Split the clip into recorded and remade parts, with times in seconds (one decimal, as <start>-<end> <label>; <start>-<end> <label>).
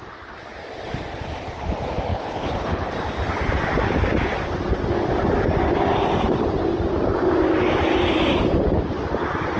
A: 0.0-2.1 recorded; 2.1-2.9 remade; 2.9-9.6 recorded